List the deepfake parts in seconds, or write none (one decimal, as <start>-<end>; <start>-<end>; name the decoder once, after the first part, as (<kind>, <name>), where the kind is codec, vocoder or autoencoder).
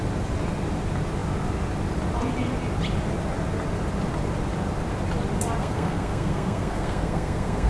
5.6-7.7 (codec, SNAC)